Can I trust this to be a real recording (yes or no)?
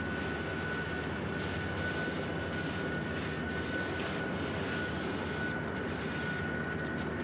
yes